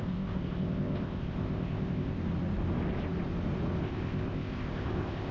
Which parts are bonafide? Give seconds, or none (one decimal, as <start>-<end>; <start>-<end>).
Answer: 2.2-3.8